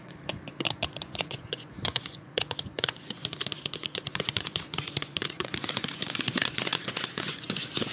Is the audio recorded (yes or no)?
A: no